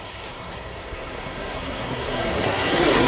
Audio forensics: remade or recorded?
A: remade